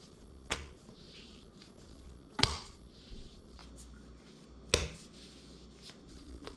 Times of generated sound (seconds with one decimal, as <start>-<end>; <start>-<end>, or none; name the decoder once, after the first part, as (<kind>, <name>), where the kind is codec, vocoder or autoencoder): 0.0-3.6 (vocoder, Vocos); 6.1-6.6